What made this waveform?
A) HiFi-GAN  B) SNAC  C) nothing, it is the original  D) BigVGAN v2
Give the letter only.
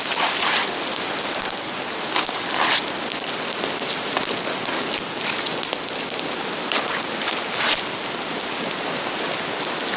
C